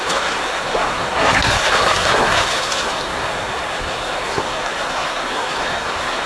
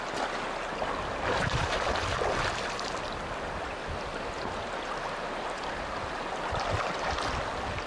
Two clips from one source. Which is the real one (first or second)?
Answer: second